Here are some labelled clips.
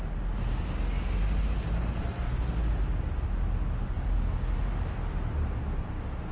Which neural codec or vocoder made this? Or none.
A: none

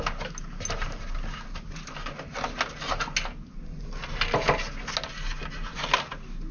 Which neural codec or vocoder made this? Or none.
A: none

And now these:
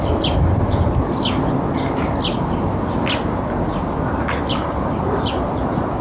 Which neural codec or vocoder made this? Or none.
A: none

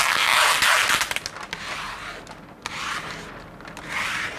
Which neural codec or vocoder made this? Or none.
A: none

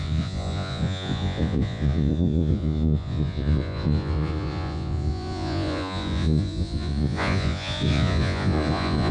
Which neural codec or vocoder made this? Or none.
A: vocoder, Vocos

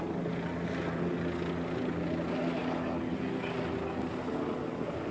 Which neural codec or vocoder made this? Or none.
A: none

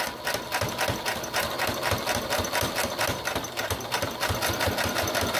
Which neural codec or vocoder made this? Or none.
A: none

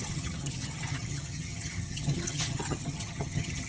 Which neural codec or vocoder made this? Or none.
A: vocoder, HiFi-GAN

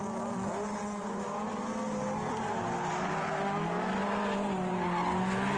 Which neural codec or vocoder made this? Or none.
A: none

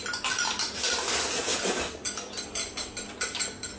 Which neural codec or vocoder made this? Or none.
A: none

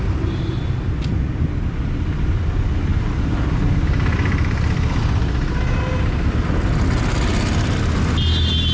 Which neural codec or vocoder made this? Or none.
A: none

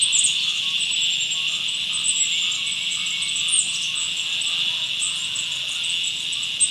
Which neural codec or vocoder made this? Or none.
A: none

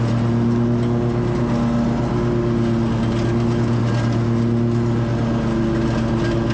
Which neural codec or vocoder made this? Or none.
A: none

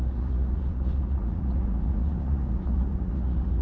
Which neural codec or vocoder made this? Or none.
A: vocoder, Vocos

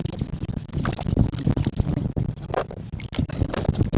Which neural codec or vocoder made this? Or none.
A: none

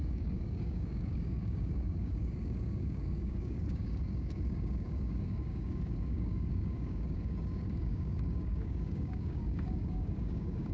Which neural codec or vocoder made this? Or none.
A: codec, DAC